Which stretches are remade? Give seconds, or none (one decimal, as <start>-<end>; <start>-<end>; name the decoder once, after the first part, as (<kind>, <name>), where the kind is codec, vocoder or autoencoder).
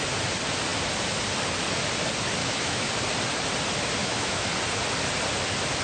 2.4-2.9 (autoencoder, DAC-VAE); 4.0-4.5